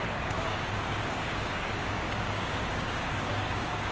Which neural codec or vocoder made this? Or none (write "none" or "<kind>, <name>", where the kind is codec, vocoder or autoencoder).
codec, DAC